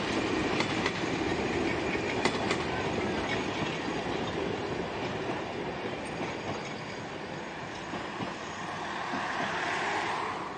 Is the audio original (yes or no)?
yes